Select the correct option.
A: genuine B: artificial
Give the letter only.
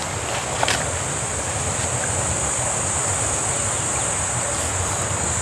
A